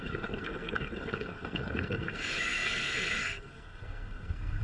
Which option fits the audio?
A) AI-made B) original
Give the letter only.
A